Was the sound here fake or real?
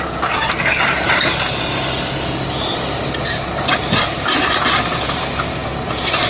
fake